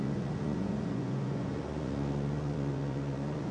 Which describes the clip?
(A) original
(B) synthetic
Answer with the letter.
B